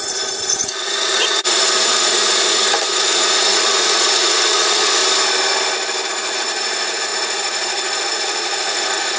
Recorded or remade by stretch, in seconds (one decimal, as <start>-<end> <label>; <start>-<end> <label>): 0.0-5.0 remade; 5.0-6.1 recorded; 6.1-9.2 remade